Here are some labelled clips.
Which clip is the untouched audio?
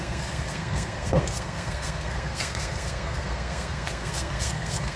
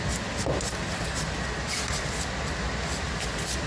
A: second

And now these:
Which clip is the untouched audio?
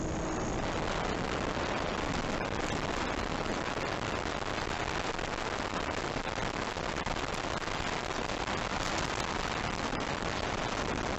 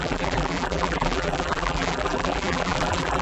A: first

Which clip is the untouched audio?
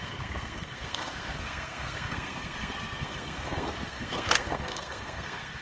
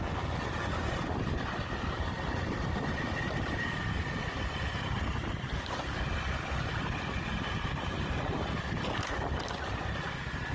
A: second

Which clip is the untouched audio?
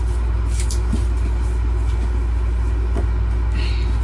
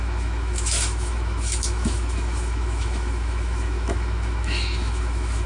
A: first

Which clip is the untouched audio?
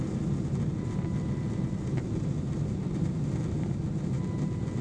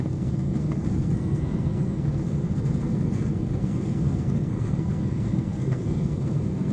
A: first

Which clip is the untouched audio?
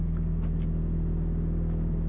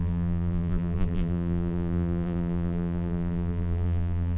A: first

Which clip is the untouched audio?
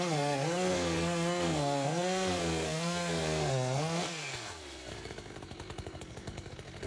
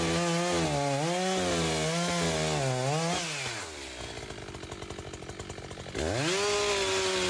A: second